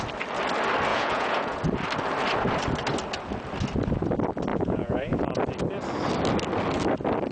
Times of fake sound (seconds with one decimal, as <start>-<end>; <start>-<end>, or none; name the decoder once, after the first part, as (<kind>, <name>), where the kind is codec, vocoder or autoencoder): 0.9-1.6 (vocoder, Vocos); 4.5-5.2